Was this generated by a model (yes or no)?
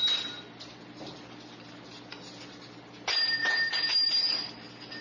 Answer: no